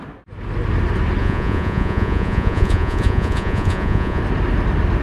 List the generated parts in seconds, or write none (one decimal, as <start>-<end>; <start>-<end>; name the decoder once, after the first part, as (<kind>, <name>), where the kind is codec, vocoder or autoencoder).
1.2-4.2 (vocoder, Vocos)